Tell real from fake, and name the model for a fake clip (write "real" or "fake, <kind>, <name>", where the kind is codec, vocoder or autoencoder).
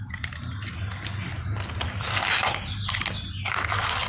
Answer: real